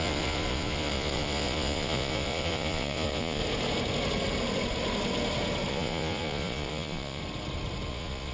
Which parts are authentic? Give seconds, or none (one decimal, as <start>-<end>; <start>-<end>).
3.4-5.7; 7.2-7.9